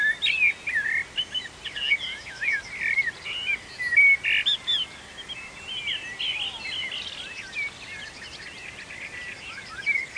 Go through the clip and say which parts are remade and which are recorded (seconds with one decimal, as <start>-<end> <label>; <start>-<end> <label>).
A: 0.0-2.1 recorded; 2.1-2.6 remade; 2.6-10.2 recorded